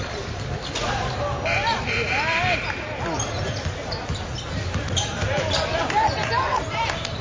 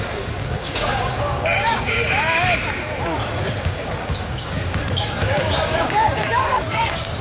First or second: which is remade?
second